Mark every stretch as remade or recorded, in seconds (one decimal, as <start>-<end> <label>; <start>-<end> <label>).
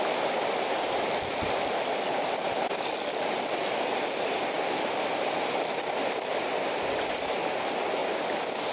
0.0-8.7 recorded